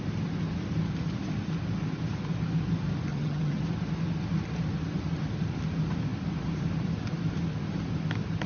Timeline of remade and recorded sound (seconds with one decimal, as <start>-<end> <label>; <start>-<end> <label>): 0.0-3.1 recorded; 3.1-3.6 remade; 3.6-8.5 recorded